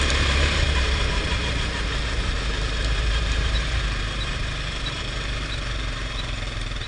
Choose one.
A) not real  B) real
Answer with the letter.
A